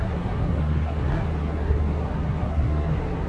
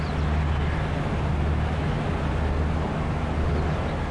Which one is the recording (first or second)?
second